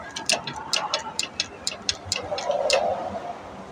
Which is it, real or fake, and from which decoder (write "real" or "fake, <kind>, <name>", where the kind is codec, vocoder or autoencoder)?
real